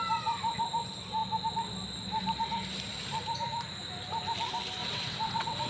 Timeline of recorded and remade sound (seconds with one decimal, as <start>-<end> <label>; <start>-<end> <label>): 0.0-4.8 recorded; 4.8-5.7 remade

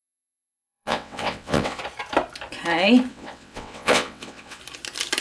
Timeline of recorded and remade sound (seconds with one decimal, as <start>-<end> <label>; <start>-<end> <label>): 0.0-1.8 remade; 1.8-3.1 recorded; 3.1-4.6 remade; 4.6-5.2 recorded

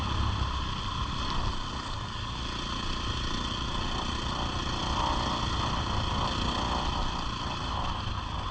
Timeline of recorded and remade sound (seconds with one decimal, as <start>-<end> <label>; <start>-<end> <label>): 0.0-8.5 recorded

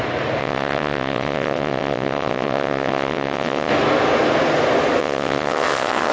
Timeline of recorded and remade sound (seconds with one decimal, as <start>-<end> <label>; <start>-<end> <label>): 0.0-0.4 recorded; 0.4-3.7 remade; 3.7-5.0 recorded; 5.0-6.1 remade

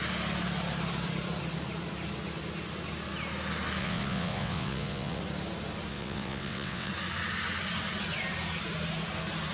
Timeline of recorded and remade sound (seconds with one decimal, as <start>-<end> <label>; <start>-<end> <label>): 0.0-3.8 recorded; 3.8-5.2 remade; 5.2-5.9 recorded; 5.9-6.9 remade; 6.9-9.5 recorded

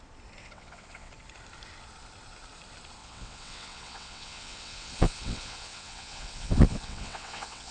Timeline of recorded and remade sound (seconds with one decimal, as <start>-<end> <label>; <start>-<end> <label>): 0.0-0.4 recorded; 0.4-1.1 remade; 1.1-3.0 recorded; 3.0-7.7 remade

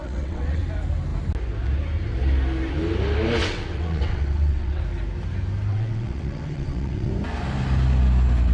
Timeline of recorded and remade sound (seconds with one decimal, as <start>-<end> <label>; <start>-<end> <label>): 0.0-0.6 remade; 0.6-3.4 recorded; 3.4-4.8 remade; 4.8-5.7 recorded; 5.7-7.1 remade; 7.1-8.5 recorded

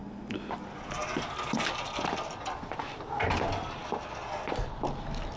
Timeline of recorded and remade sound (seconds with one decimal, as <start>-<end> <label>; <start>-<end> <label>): 0.0-5.4 recorded